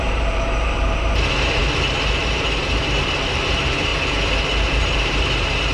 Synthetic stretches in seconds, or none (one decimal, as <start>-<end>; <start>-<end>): 0.0-1.6; 2.2-2.8; 3.4-3.9; 4.7-5.7